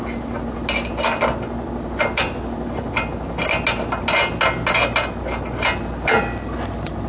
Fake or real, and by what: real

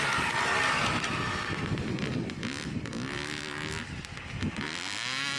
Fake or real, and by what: real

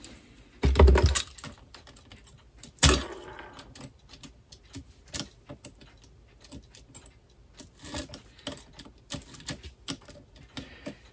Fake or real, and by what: real